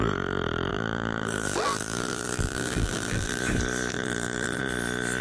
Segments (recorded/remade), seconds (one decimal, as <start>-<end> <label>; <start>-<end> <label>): 0.0-0.7 recorded; 0.7-3.4 remade; 3.4-3.9 recorded; 3.9-4.6 remade; 4.6-5.2 recorded